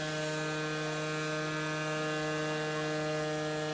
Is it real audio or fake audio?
real